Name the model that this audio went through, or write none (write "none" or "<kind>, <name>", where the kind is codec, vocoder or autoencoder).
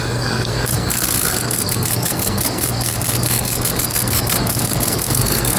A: codec, SNAC